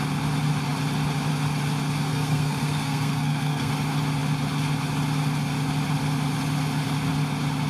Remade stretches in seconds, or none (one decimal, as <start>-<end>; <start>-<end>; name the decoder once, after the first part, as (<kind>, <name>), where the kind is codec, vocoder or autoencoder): 2.1-3.7 (codec, SNAC)